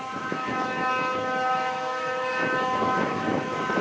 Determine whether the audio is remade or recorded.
remade